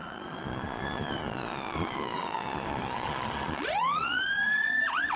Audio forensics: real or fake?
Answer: fake